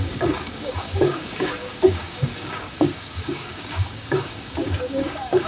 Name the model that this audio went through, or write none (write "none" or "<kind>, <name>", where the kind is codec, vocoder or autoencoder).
codec, DAC